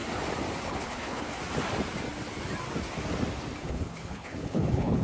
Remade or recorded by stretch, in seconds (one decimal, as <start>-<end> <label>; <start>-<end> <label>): 0.0-0.6 recorded; 0.6-1.3 remade; 1.3-3.7 recorded; 3.7-5.0 remade